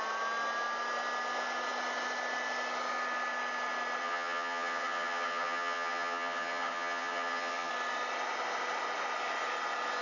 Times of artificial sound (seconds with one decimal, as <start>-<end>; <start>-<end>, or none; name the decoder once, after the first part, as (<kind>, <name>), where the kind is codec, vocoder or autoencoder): 4.0-7.7 (vocoder, HiFi-GAN)